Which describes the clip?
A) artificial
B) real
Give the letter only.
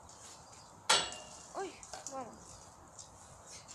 B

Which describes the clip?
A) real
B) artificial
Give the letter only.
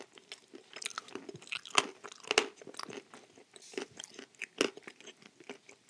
A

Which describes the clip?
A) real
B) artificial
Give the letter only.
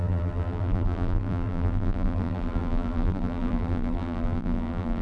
B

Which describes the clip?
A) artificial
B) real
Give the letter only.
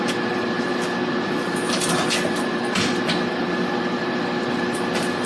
B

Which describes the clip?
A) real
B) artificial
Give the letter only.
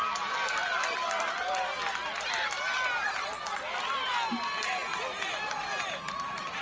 A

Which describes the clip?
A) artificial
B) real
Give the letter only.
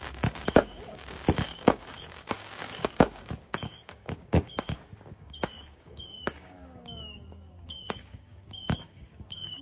A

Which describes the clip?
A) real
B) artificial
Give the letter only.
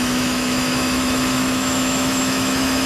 B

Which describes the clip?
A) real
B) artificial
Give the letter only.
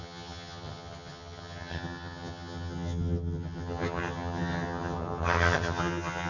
B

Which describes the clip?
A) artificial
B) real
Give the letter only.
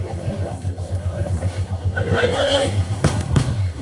A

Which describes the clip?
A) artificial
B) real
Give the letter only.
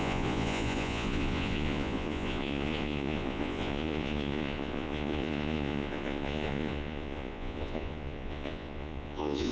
A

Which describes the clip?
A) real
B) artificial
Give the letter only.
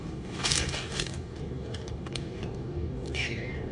B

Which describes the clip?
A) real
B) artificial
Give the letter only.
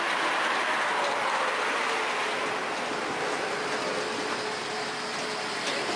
A